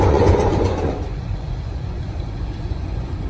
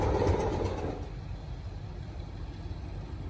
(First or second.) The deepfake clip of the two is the first